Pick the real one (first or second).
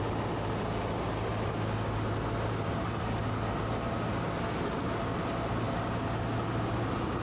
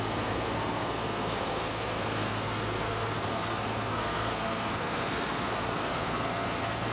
first